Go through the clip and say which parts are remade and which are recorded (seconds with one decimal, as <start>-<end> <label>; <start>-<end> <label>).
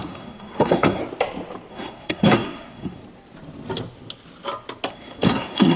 0.0-1.0 remade; 1.0-1.7 recorded; 1.7-3.0 remade; 3.0-4.9 recorded; 4.9-5.8 remade